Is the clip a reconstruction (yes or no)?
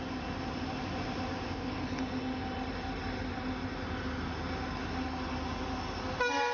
no